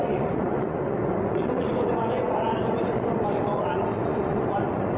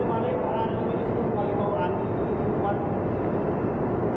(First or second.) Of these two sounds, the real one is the second